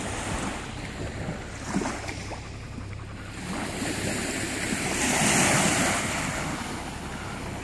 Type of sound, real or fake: fake